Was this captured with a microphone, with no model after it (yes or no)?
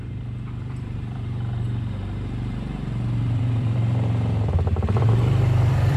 no